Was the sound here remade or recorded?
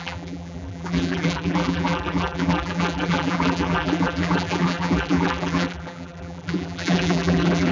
remade